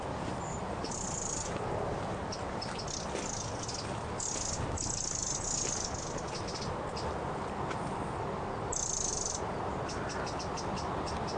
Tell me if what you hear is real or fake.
real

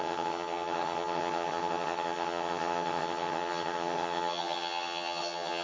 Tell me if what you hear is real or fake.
fake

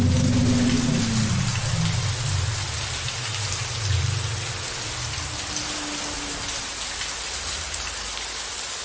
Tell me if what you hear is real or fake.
real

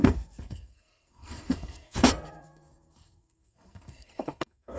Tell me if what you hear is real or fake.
fake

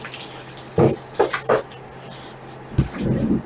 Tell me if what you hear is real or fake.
fake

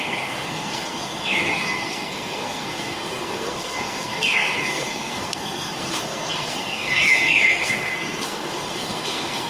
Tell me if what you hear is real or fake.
fake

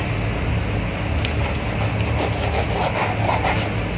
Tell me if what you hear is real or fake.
real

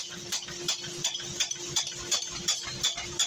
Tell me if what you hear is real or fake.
real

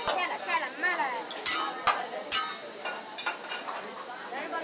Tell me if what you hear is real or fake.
real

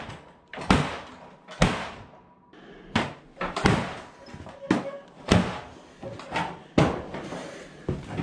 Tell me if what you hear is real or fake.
real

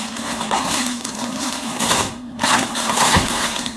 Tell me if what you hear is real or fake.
fake